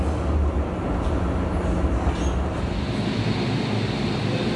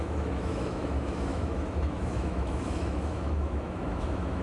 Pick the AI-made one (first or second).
second